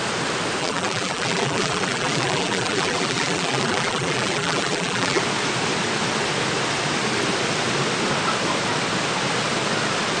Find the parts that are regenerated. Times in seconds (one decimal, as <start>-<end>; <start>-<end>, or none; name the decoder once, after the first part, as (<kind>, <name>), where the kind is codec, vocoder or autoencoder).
0.6-5.2 (vocoder, BigVGAN v2)